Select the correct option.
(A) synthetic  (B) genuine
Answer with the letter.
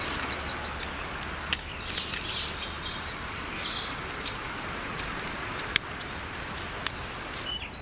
B